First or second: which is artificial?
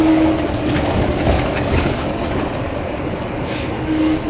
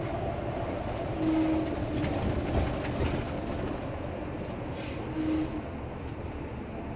first